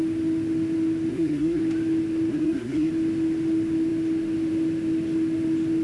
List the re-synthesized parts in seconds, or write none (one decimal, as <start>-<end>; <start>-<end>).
1.1-1.6; 2.3-2.9